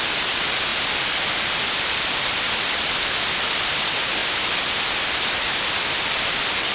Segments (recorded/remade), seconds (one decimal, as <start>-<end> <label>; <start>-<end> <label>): 0.0-6.7 remade